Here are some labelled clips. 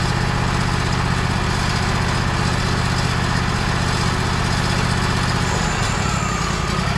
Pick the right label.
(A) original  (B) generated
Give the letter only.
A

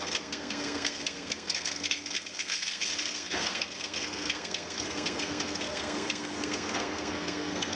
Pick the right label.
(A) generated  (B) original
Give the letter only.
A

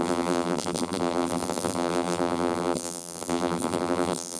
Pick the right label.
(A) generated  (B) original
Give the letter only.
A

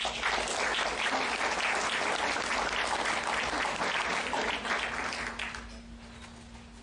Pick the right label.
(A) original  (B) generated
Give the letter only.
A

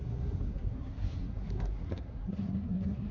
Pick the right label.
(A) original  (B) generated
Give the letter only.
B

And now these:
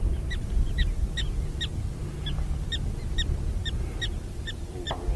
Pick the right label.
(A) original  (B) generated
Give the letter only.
A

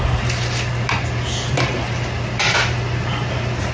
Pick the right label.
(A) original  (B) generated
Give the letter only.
A